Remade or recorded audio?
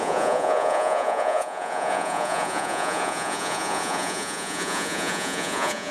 remade